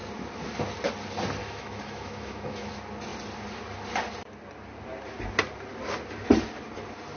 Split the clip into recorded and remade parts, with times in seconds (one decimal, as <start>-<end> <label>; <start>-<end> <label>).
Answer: 0.0-1.4 recorded; 1.4-2.7 remade; 2.7-7.2 recorded